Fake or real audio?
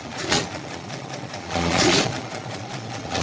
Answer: fake